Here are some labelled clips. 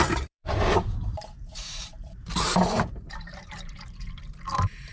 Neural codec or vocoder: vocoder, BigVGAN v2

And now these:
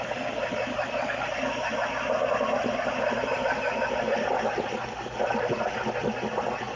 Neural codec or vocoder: none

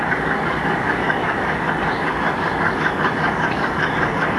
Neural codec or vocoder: codec, DAC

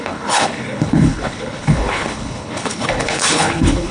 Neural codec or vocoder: codec, HILCodec